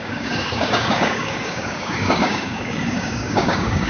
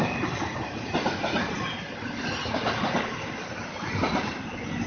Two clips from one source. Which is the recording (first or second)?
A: second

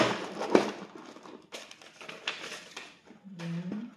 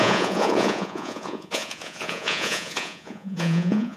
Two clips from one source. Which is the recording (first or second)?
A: first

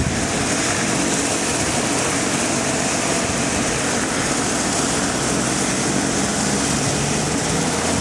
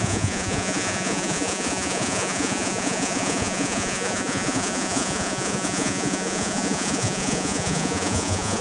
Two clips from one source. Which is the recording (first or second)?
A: first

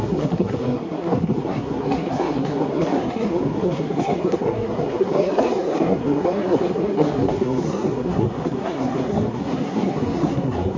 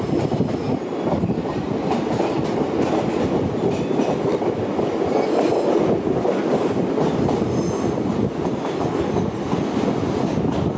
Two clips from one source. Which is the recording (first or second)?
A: second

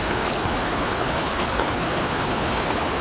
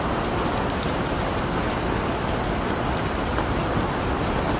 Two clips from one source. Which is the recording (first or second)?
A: second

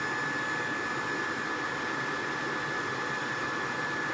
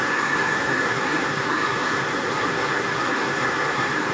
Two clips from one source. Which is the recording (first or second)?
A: first